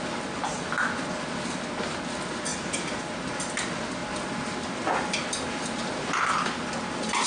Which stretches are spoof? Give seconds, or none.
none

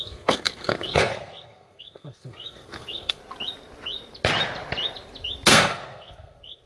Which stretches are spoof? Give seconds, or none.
0.0-3.2 (codec, SNAC); 5.5-6.7

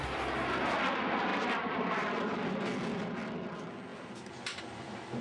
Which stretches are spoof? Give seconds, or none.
1.3-3.5 (vocoder, BigVGAN v2)

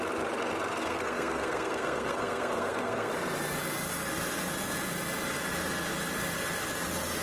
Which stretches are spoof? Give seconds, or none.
0.8-3.1 (codec, SNAC)

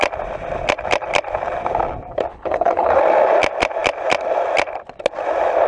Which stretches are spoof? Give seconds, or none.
2.3-3.0 (codec, HILCodec)

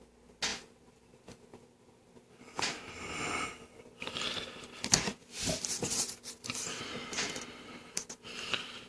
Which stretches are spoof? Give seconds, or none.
0.5-3.3 (vocoder, BigVGAN v2); 5.2-6.9

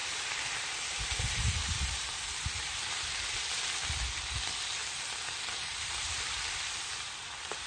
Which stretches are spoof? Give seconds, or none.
0.0-3.8 (vocoder, BigVGAN v2); 4.8-7.1